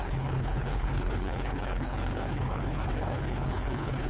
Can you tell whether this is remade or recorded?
remade